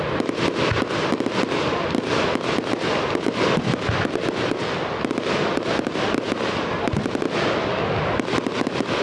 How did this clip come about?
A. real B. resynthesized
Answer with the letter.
A